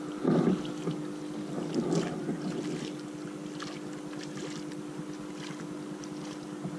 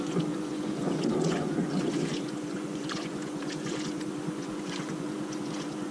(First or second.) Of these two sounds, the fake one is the second